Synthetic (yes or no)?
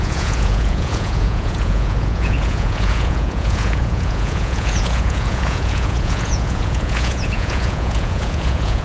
yes